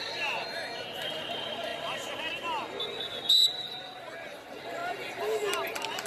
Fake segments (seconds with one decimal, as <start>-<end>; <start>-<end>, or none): 0.0-1.7; 3.2-6.1